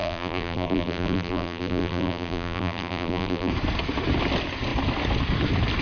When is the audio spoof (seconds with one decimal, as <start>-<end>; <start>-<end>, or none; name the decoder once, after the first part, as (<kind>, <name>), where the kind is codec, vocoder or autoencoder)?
0.0-3.5 (vocoder, BigVGAN v2)